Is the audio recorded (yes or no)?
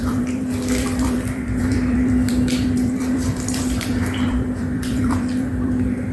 no